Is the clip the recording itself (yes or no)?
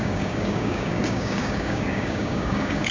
no